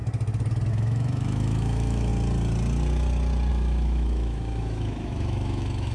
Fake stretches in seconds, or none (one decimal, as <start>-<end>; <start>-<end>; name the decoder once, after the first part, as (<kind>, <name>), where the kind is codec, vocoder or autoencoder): 0.7-2.1 (autoencoder, DAC-VAE); 3.5-5.9

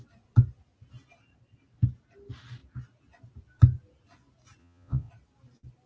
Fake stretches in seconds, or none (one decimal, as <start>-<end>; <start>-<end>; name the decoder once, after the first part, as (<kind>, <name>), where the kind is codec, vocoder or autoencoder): 4.6-5.1 (vocoder, Vocos)

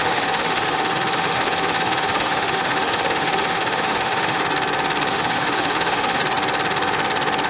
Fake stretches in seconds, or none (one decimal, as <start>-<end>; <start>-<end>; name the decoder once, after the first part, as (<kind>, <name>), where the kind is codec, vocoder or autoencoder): 0.0-4.4 (autoencoder, DAC-VAE); 5.1-6.2

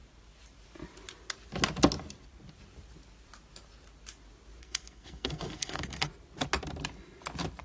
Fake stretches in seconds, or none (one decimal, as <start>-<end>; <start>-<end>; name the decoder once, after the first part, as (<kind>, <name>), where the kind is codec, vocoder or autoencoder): 4.6-6.1 (codec, SNAC)